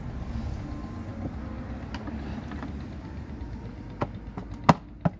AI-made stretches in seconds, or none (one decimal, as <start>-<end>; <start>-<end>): none